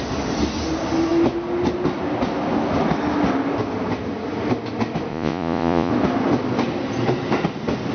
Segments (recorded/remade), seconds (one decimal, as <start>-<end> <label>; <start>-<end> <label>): 0.0-5.1 recorded; 5.1-5.9 remade; 5.9-7.9 recorded

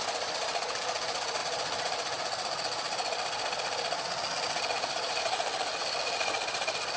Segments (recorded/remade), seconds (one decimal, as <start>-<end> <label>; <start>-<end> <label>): 0.0-7.0 recorded